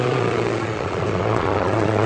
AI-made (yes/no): yes